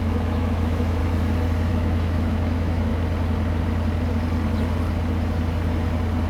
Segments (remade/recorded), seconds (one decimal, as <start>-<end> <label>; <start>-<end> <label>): 0.0-1.0 remade; 1.0-1.7 recorded; 1.7-2.9 remade; 2.9-6.3 recorded